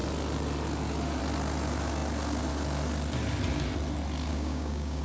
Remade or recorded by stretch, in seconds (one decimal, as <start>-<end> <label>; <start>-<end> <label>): 0.0-4.3 recorded; 4.3-5.0 remade